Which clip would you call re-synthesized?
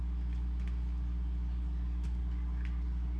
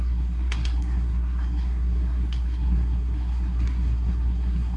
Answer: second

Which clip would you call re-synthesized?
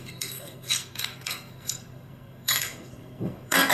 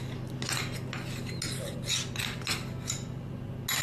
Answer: first